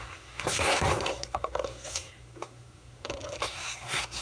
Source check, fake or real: fake